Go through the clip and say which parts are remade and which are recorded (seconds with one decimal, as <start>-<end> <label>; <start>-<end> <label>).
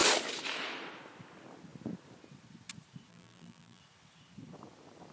0.0-3.1 recorded; 3.1-3.8 remade; 3.8-5.1 recorded